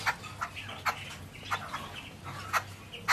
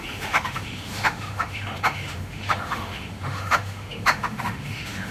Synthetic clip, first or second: second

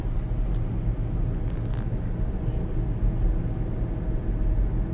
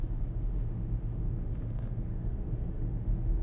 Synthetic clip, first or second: second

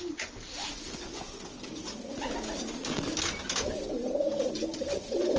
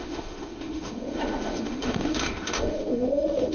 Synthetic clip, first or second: second